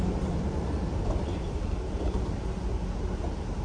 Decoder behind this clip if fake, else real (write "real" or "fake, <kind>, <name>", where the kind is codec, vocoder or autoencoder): fake, vocoder, BigVGAN v2